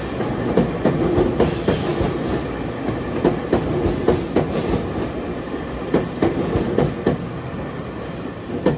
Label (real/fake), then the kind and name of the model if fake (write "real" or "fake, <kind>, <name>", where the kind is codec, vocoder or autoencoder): real